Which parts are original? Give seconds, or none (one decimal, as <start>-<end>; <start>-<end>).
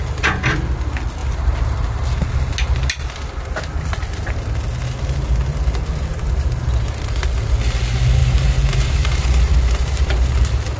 0.0-6.1; 6.7-8.2; 10.4-10.8